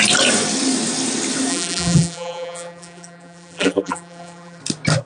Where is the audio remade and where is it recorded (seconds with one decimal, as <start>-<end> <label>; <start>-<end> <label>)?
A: 0.0-1.5 recorded; 1.5-4.6 remade; 4.6-5.1 recorded